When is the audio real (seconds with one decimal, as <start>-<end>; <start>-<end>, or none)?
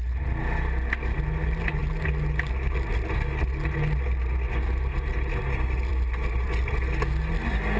0.0-7.8